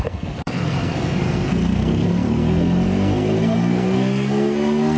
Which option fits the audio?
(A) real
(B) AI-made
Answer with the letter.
B